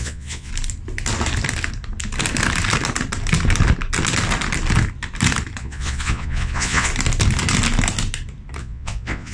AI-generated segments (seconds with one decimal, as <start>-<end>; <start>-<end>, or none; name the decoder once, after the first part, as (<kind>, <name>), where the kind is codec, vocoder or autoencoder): 0.0-0.5 (vocoder, Vocos); 5.6-6.9; 8.6-9.3